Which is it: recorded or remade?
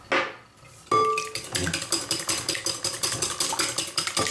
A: recorded